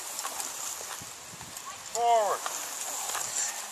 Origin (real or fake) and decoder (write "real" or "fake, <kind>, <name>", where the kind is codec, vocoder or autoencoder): real